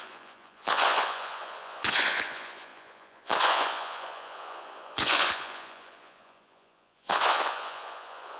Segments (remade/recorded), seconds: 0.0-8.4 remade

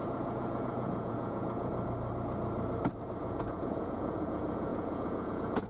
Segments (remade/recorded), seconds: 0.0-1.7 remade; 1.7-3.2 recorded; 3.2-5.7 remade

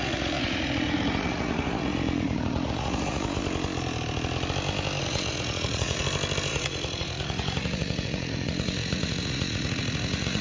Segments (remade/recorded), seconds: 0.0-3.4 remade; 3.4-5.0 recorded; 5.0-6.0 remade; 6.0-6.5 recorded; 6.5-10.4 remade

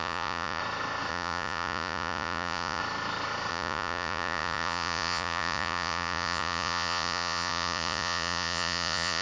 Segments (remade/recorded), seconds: 0.0-0.6 remade; 0.6-1.1 recorded; 1.1-2.8 remade; 2.8-3.5 recorded; 3.5-9.2 remade

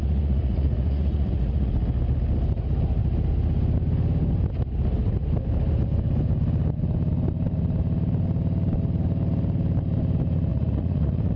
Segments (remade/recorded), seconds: 0.0-1.7 remade; 1.7-10.5 recorded; 10.5-11.4 remade

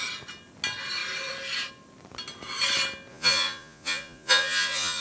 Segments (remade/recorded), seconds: 0.0-3.1 recorded; 3.1-5.0 remade

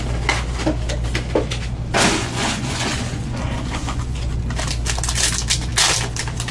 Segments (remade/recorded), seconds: 0.0-2.2 recorded; 2.2-4.4 remade; 4.4-6.5 recorded

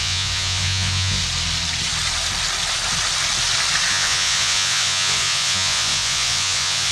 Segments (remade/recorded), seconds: 0.0-1.2 remade; 1.2-3.9 recorded; 3.9-6.9 remade